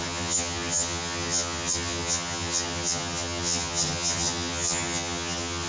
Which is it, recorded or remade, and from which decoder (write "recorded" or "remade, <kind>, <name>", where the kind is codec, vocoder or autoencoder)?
remade, vocoder, HiFi-GAN